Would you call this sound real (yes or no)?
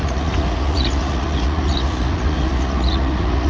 no